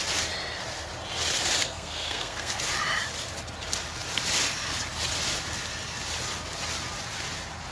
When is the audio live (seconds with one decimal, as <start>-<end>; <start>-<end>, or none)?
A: 0.0-1.6; 2.6-7.7